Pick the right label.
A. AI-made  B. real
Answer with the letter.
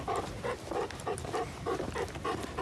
B